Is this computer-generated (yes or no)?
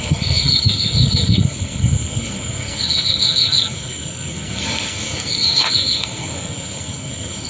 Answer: yes